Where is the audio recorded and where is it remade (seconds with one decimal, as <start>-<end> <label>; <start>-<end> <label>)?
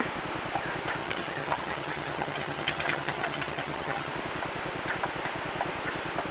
0.0-1.0 recorded; 1.0-4.1 remade; 4.1-6.3 recorded